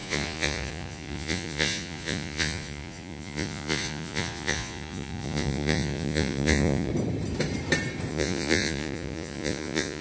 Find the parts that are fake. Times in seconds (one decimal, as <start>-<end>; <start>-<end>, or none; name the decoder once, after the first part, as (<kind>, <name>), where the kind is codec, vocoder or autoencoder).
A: 0.0-6.9 (vocoder, Vocos); 8.1-10.0